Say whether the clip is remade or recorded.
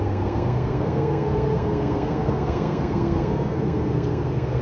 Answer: remade